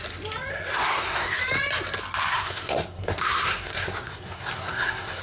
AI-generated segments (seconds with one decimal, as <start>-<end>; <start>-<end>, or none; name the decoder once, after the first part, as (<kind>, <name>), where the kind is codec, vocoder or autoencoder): 0.5-1.4 (codec, SNAC); 2.3-5.2